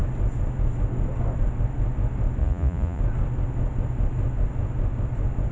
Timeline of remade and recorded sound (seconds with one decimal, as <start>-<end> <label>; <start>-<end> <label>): 0.0-2.4 recorded; 2.4-3.0 remade; 3.0-5.5 recorded